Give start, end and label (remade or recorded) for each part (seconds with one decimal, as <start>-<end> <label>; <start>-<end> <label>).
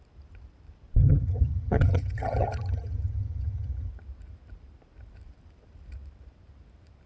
0.0-1.0 recorded; 1.0-3.9 remade; 3.9-7.1 recorded